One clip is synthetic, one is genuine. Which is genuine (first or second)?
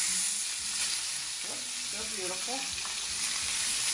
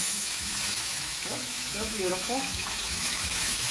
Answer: first